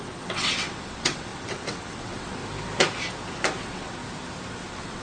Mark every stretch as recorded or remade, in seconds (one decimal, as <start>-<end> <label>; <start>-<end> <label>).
0.0-2.4 remade; 2.4-3.6 recorded; 3.6-4.0 remade; 4.0-4.5 recorded; 4.5-5.0 remade